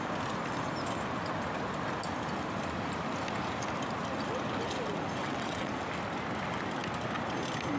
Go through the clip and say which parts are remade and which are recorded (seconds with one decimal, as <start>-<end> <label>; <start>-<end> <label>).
0.0-5.2 recorded; 5.2-5.7 remade; 5.7-7.8 recorded